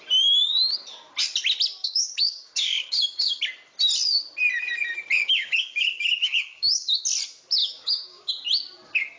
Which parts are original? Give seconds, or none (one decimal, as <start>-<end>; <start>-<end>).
0.0-1.8; 3.4-5.2; 6.9-7.6; 8.3-9.2

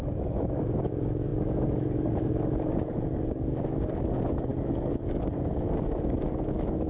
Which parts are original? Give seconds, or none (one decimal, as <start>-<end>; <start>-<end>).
none

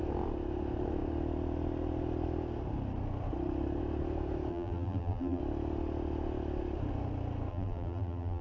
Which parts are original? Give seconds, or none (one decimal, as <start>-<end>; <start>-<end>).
0.0-4.5; 5.4-7.5

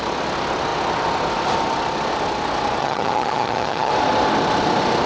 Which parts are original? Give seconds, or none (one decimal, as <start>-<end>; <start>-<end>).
0.0-2.8; 3.9-5.1

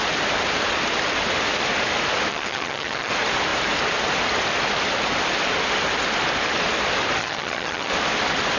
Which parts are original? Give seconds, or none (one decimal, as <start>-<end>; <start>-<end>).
0.0-2.3; 3.1-7.2; 7.9-8.6